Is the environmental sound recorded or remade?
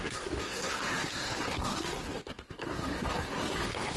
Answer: remade